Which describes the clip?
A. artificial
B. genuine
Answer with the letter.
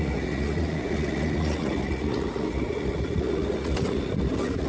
A